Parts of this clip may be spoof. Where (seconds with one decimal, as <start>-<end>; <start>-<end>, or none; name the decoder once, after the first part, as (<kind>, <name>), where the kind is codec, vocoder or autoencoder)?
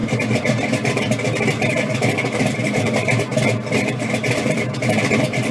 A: 0.0-5.5 (vocoder, BigVGAN v2)